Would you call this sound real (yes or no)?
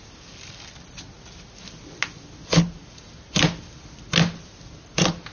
yes